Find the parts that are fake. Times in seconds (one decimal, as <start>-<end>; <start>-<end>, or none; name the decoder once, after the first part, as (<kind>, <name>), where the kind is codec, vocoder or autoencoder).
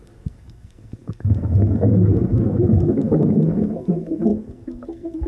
0.0-5.3 (codec, SNAC)